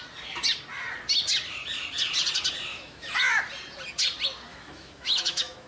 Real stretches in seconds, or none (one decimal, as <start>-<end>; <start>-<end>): 0.0-2.7; 3.3-4.5